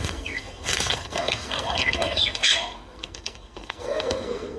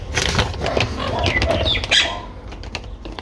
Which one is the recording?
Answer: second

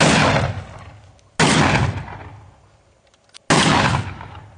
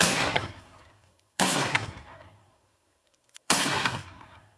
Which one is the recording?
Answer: first